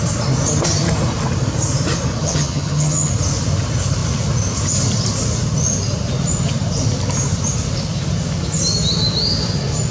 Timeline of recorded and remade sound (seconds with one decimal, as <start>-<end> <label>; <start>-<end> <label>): 0.0-2.2 recorded; 2.2-3.1 remade; 3.1-9.9 recorded